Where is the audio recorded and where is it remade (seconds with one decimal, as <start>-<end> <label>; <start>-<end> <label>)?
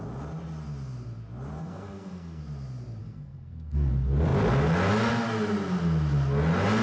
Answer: 0.0-1.5 recorded; 1.5-2.4 remade; 2.4-3.0 recorded; 3.0-3.9 remade; 3.9-6.8 recorded